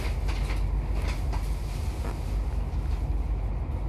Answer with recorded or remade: recorded